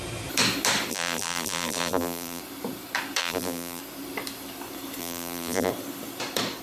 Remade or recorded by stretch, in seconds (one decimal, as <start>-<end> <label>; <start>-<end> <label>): 0.0-0.9 recorded; 0.9-2.4 remade; 2.4-3.2 recorded; 3.2-3.8 remade; 3.8-5.0 recorded; 5.0-5.7 remade; 5.7-6.6 recorded

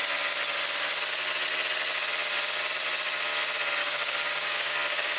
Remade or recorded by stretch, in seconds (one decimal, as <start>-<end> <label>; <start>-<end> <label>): 0.0-3.8 recorded; 3.8-5.2 remade

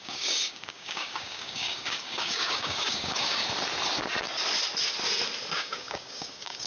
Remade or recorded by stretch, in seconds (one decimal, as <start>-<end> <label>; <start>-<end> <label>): 0.0-3.4 remade; 3.4-5.5 recorded; 5.5-6.7 remade

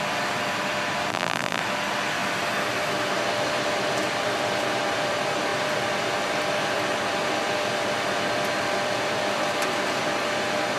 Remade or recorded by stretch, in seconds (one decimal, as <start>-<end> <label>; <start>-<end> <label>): 0.0-1.1 recorded; 1.1-1.6 remade; 1.6-10.8 recorded